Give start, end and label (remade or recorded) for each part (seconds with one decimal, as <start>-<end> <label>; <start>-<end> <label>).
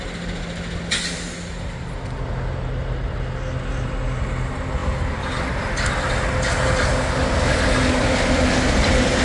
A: 0.0-9.2 recorded